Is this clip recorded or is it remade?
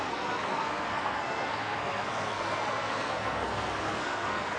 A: remade